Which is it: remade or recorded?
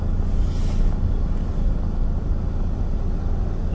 recorded